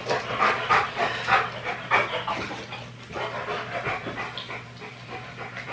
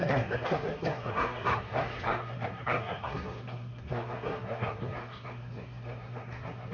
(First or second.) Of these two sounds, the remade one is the second